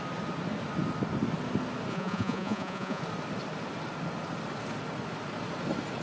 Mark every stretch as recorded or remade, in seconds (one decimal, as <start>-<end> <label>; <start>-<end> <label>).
0.0-1.9 recorded; 1.9-3.0 remade; 3.0-6.0 recorded